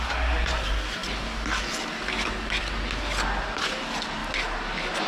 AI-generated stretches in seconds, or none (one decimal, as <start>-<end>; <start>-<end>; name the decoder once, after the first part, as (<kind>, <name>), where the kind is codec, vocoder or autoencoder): 0.0-1.0 (vocoder, BigVGAN v2); 3.4-4.2